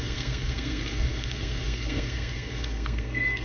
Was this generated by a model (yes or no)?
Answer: yes